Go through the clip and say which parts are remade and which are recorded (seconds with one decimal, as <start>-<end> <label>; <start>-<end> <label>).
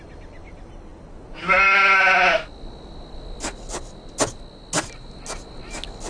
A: 0.0-6.1 recorded